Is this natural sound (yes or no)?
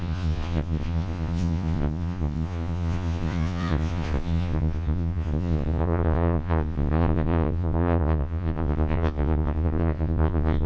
no